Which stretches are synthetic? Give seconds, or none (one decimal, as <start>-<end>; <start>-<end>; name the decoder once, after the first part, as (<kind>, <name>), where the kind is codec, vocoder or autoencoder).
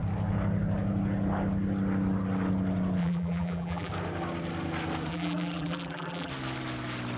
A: 3.0-3.9 (vocoder, BigVGAN v2); 5.1-6.3